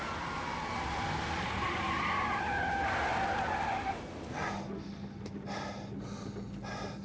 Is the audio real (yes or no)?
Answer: yes